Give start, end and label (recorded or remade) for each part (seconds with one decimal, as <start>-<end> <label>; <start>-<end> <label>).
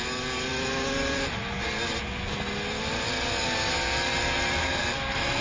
0.0-4.6 recorded; 4.6-5.4 remade